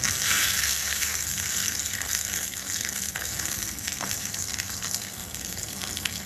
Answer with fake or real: fake